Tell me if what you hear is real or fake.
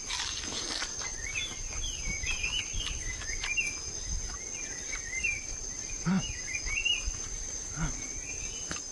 real